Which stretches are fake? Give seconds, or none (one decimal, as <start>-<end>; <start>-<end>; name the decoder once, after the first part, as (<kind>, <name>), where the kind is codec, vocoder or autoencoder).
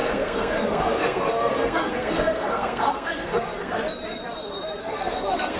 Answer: 0.0-3.8 (codec, SNAC); 4.8-5.6